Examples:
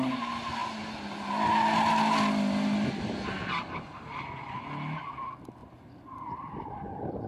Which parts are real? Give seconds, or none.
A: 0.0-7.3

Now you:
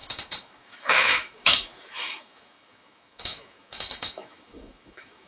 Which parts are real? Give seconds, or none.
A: none

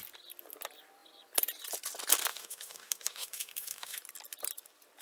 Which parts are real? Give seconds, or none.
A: 0.0-2.3; 4.0-5.0

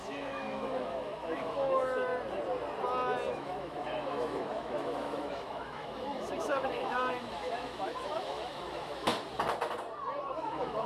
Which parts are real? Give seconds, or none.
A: 2.1-3.3; 9.1-10.4

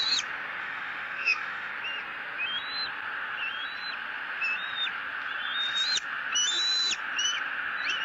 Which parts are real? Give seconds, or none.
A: 0.0-0.6; 1.7-8.0

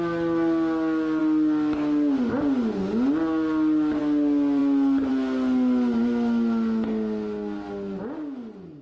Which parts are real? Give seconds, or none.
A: 0.0-8.8

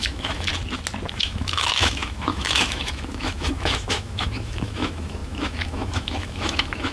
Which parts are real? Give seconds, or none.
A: 0.5-1.1

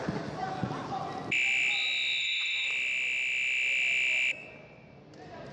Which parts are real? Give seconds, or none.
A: 0.0-2.2; 2.7-5.5